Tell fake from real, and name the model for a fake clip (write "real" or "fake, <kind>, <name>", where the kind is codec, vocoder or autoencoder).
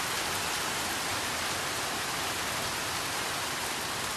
real